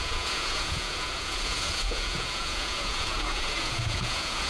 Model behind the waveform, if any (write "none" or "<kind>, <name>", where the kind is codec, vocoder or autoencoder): vocoder, Vocos